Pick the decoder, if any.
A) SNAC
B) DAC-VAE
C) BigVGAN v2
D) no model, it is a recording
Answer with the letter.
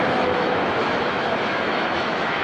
B